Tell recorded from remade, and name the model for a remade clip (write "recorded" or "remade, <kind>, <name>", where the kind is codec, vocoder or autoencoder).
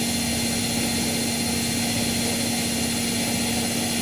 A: recorded